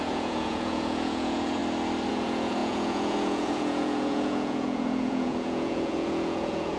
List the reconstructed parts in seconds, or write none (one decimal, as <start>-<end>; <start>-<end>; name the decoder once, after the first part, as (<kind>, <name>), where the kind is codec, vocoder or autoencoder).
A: 0.0-1.6 (vocoder, Vocos); 2.1-6.8